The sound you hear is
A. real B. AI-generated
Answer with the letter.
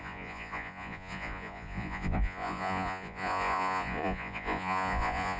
B